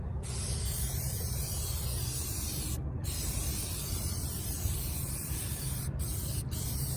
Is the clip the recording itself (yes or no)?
yes